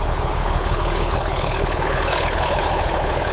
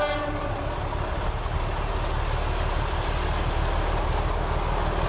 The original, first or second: second